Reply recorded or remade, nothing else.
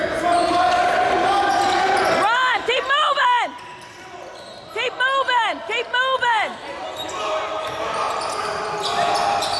recorded